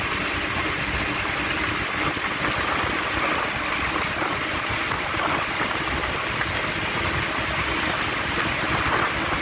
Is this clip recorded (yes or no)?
yes